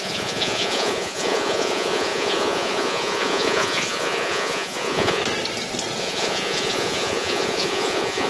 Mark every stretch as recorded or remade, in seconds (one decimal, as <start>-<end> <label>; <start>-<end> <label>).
0.0-5.2 remade; 5.2-6.0 recorded; 6.0-8.3 remade